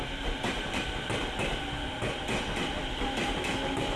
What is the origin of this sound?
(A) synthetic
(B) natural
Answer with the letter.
B